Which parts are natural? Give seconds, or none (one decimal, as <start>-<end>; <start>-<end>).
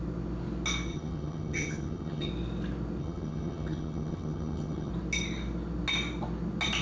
0.0-0.9; 2.3-3.0; 4.9-6.8